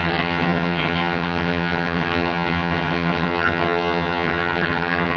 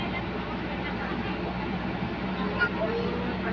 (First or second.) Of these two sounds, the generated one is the first